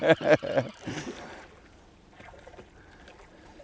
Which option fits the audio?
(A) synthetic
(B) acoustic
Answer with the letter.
B